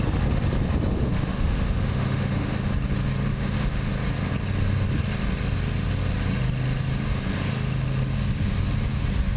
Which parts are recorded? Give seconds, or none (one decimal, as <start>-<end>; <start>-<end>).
0.0-0.9; 2.7-3.3; 3.9-9.4